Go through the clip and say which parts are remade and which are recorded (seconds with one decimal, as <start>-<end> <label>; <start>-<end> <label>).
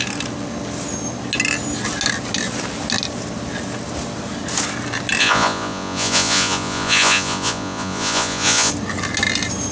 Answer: 0.0-5.2 recorded; 5.2-8.7 remade; 8.7-9.7 recorded